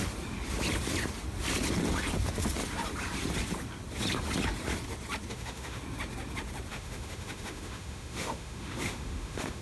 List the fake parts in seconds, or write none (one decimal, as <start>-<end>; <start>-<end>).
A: 5.3-5.8; 6.7-9.6